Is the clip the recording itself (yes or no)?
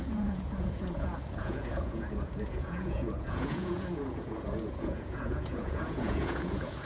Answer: no